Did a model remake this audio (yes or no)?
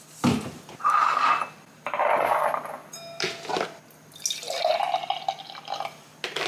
no